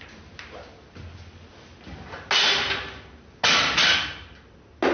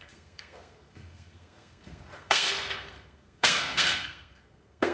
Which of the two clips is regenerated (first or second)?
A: second